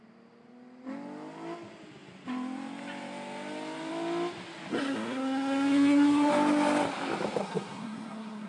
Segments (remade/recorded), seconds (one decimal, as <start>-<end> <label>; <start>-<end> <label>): 0.0-4.7 recorded; 4.7-6.3 remade; 6.3-7.4 recorded; 7.4-8.5 remade